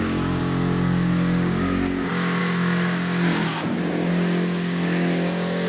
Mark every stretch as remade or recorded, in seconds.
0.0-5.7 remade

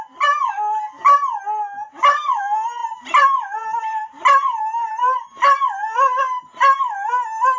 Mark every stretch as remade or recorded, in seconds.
0.0-1.8 recorded; 1.8-2.4 remade; 2.4-2.8 recorded; 2.8-6.2 remade; 6.2-7.6 recorded

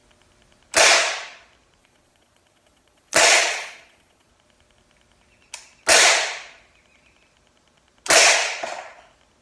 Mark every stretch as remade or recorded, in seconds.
0.0-1.8 recorded; 1.8-4.3 remade; 4.3-9.4 recorded

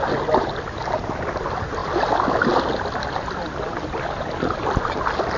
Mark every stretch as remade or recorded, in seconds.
0.0-5.4 recorded

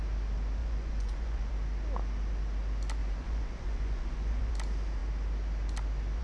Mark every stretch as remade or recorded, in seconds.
0.0-0.6 recorded; 0.6-1.5 remade; 1.5-3.0 recorded; 3.0-4.5 remade; 4.5-6.2 recorded